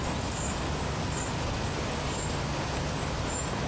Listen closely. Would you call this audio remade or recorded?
remade